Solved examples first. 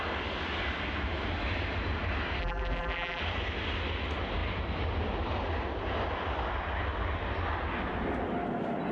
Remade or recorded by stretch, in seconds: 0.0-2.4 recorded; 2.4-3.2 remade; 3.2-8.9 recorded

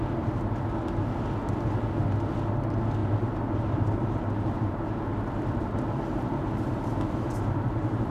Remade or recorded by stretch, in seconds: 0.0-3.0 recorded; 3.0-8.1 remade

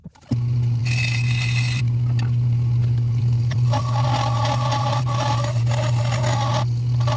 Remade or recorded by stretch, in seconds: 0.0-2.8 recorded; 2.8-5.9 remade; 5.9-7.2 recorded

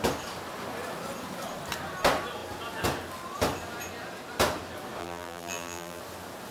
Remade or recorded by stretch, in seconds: 0.0-5.0 recorded; 5.0-6.0 remade; 6.0-6.5 recorded

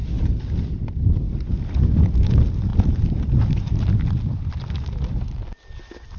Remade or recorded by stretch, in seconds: 0.0-2.3 remade; 2.3-2.7 recorded; 2.7-5.2 remade; 5.2-6.2 recorded

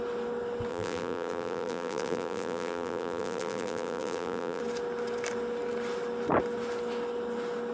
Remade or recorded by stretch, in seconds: 0.0-0.7 recorded; 0.7-4.6 remade; 4.6-7.7 recorded